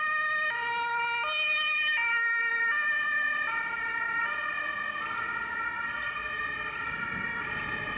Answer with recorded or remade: recorded